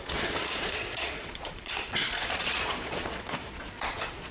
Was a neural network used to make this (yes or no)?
yes